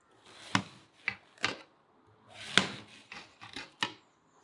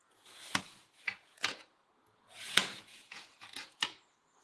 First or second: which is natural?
first